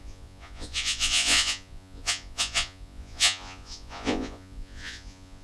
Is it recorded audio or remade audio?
remade